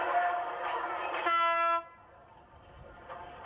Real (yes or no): yes